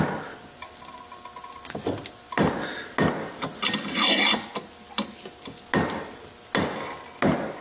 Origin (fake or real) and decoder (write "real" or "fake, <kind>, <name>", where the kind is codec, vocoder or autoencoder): real